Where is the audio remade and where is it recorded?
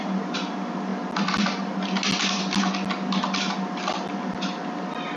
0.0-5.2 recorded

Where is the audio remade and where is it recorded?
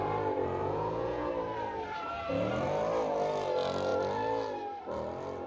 0.0-0.6 recorded; 0.6-1.3 remade; 1.3-5.5 recorded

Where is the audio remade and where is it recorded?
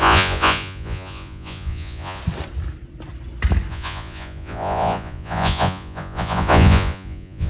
0.0-2.2 remade; 2.2-3.7 recorded; 3.7-7.5 remade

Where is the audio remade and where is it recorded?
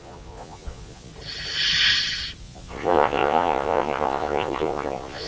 0.0-1.1 remade; 1.1-2.4 recorded; 2.4-5.3 remade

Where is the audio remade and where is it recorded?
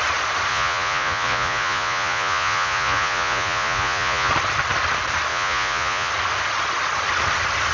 0.0-0.5 recorded; 0.5-4.3 remade; 4.3-5.3 recorded; 5.3-6.1 remade; 6.1-7.7 recorded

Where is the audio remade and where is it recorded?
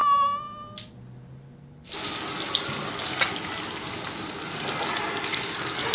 0.0-5.9 recorded